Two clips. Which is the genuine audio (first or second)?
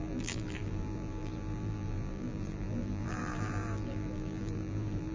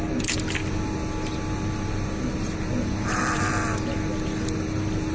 second